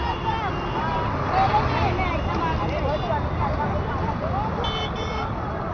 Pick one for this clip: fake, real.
real